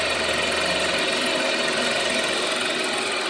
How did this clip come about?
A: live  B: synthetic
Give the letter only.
A